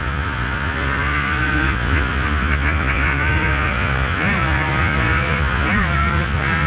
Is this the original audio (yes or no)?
no